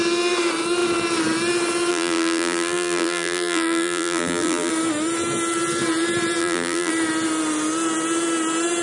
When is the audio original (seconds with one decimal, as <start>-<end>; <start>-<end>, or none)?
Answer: 0.0-1.9; 4.7-6.4; 6.9-8.8